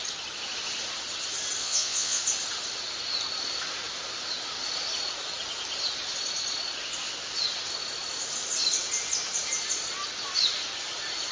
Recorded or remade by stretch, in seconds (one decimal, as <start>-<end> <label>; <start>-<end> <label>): 0.0-1.6 recorded; 1.6-2.2 remade; 2.2-11.3 recorded

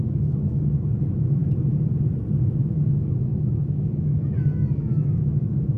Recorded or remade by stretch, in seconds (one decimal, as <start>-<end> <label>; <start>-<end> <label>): 0.0-1.4 remade; 1.4-2.4 recorded; 2.4-5.8 remade

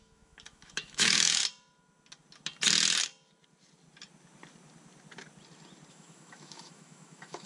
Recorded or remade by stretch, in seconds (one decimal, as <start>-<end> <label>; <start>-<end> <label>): 0.0-1.4 remade; 1.4-5.9 recorded; 5.9-7.5 remade